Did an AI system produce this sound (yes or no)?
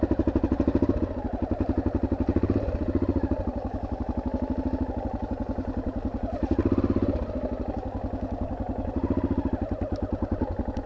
no